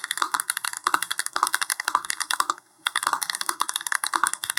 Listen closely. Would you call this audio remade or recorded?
remade